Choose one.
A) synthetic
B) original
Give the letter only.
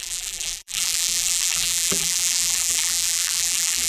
A